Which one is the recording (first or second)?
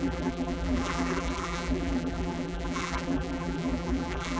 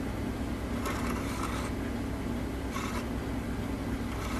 second